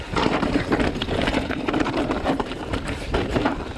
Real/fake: fake